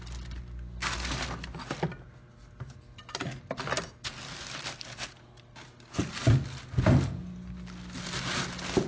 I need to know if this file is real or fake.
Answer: real